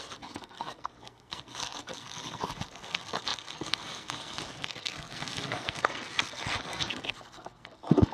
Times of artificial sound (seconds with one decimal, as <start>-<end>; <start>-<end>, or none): 0.0-8.1